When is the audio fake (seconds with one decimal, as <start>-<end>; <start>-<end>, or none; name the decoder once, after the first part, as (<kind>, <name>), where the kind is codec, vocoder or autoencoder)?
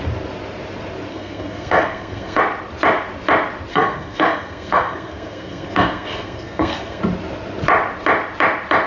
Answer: 1.1-2.4 (codec, SNAC); 3.7-7.0